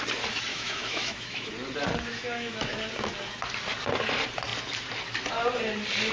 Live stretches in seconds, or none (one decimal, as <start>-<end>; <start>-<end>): 0.0-0.5; 1.5-2.1; 2.8-6.1